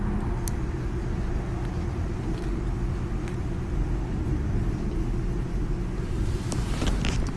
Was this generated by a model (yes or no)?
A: no